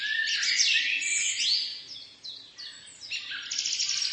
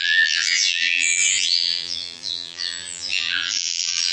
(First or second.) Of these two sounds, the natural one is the first